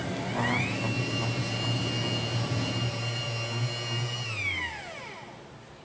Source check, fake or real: real